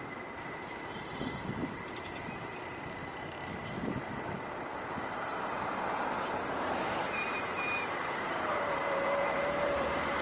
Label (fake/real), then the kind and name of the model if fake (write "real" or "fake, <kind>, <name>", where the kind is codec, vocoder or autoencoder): fake, vocoder, BigVGAN v2